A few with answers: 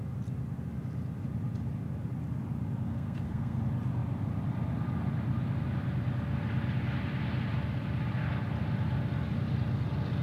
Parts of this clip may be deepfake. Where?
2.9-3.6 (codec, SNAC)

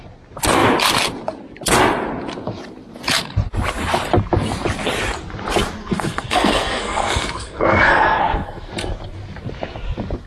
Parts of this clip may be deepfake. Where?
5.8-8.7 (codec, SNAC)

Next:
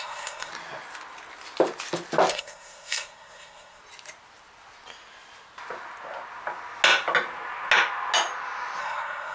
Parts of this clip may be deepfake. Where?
0.0-0.5 (codec, SNAC); 2.3-3.8; 8.8-9.3

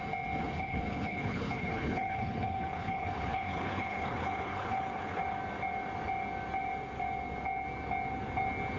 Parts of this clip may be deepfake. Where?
0.4-5.2 (codec, HILCodec)

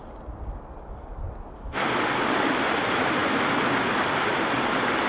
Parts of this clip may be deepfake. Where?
none

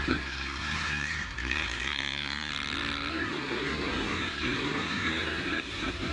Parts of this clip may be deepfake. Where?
0.0-2.5 (codec, SNAC); 3.1-6.1

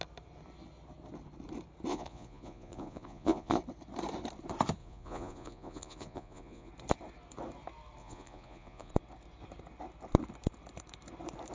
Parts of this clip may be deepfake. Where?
1.9-3.6 (vocoder, Vocos); 4.8-6.7; 8.0-8.9